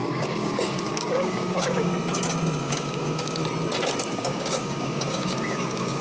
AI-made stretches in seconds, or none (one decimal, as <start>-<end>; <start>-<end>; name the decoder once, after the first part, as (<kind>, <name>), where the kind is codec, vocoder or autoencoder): 0.0-1.9 (codec, DAC); 2.6-3.4; 4.1-6.0